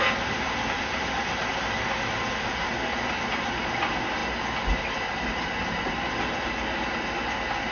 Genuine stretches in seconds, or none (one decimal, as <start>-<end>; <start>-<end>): 0.0-7.7